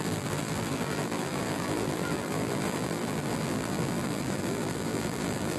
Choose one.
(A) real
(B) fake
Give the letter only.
B